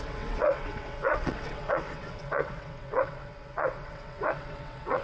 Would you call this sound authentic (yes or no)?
no